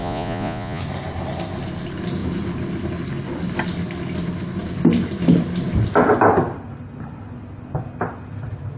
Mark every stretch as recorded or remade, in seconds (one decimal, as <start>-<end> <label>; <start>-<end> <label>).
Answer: 0.0-0.8 remade; 0.8-8.8 recorded